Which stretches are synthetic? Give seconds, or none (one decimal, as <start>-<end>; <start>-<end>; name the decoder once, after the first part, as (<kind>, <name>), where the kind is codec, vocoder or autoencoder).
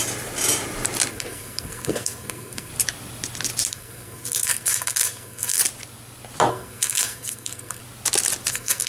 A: 1.1-2.7 (codec, SNAC); 3.7-5.6; 6.5-7.8; 8.5-8.9